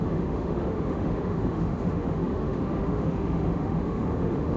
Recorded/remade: remade